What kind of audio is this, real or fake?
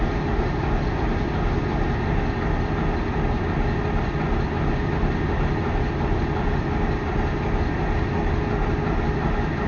real